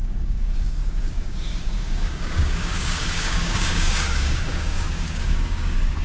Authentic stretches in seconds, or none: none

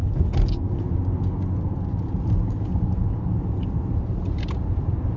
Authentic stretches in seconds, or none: 0.0-3.1

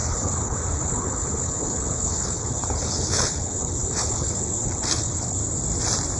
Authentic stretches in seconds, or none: 5.4-6.2

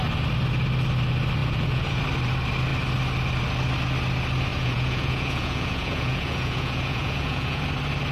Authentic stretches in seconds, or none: 0.0-1.4; 2.0-4.5; 7.6-8.1

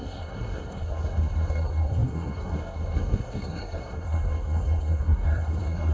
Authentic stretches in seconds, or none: none

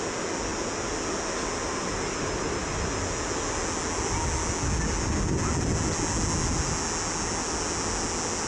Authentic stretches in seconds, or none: 0.0-8.5

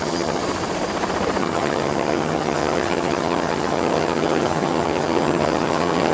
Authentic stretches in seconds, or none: 0.4-1.4